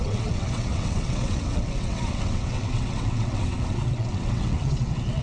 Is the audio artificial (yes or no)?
yes